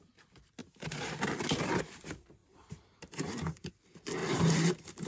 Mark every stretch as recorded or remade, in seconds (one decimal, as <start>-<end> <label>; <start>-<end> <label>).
0.0-0.6 recorded; 0.6-1.3 remade; 1.3-2.4 recorded; 2.4-3.7 remade; 3.7-4.2 recorded; 4.2-5.1 remade